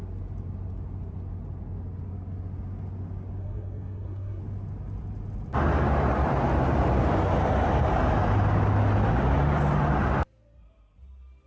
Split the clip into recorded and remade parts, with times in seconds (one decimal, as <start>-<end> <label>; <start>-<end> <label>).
0.0-3.4 recorded; 3.4-4.4 remade; 4.4-11.5 recorded